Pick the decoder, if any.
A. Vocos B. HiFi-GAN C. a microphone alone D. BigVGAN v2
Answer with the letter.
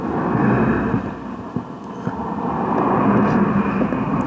C